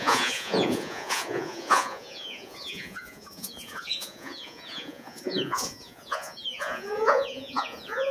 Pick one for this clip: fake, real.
fake